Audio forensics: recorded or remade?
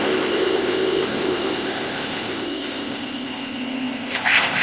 remade